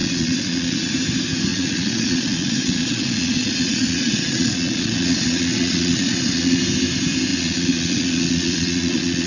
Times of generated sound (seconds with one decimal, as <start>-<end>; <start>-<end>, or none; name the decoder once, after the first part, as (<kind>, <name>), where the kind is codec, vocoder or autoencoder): 0.0-0.9 (vocoder, Vocos); 1.5-6.6; 7.3-9.3